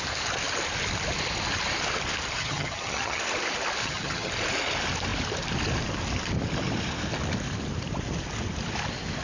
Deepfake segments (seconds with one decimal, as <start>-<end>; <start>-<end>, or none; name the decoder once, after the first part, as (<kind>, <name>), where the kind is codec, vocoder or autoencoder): 2.4-3.2 (vocoder, HiFi-GAN); 3.8-4.3